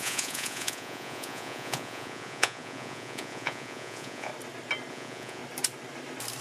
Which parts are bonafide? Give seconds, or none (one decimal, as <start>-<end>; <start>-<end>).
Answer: 4.3-4.9; 5.4-6.4